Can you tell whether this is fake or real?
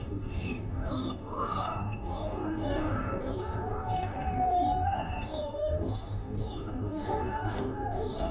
fake